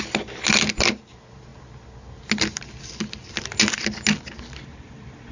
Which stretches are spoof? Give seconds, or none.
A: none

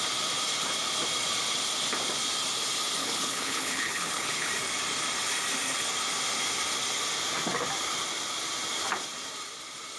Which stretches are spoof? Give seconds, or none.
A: 3.0-4.5 (codec, HILCodec)

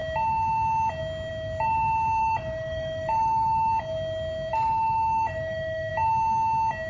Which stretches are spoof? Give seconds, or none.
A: 2.2-3.7 (autoencoder, DAC-VAE); 4.5-5.9

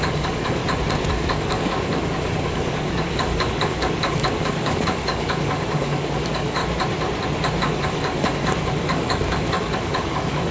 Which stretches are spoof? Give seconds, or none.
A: 0.0-0.6 (codec, DAC); 1.1-6.6; 7.6-10.5

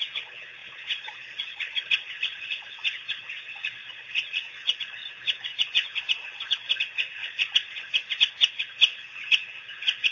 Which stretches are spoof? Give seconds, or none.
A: 0.6-4.4 (vocoder, Vocos); 7.2-7.9

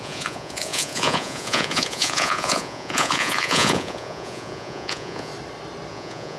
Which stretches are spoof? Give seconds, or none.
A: 0.0-5.3 (vocoder, Vocos); 5.9-6.4